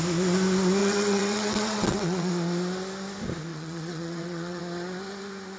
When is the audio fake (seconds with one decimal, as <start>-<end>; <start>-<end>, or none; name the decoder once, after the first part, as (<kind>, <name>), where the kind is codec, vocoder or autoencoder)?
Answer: 0.8-2.3 (vocoder, WaveNeXt); 3.5-4.6